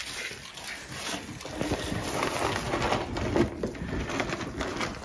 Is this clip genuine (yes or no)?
yes